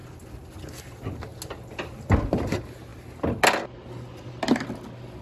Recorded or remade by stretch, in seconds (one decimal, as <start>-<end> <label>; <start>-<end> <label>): 0.0-5.2 recorded